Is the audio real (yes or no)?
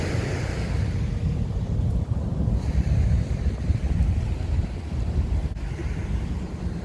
yes